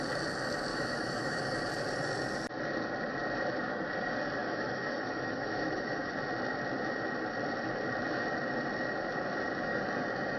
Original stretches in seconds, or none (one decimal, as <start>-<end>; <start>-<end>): 0.0-0.7; 1.4-4.4; 6.1-10.4